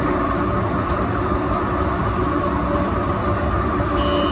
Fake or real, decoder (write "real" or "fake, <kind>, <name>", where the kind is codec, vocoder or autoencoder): real